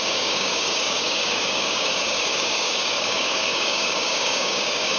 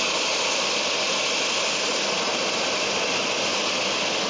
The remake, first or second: first